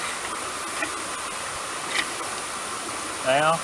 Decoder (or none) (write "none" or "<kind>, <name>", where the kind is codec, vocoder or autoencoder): none